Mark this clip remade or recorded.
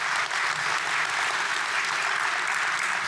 recorded